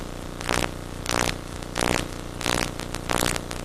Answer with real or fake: real